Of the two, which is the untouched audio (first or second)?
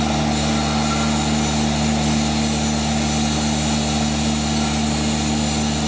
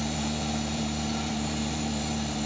first